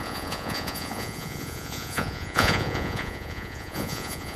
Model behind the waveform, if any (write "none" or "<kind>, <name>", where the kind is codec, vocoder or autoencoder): vocoder, Vocos